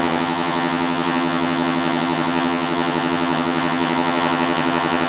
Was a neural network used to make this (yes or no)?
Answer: yes